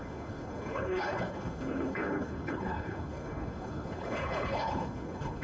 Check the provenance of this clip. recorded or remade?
remade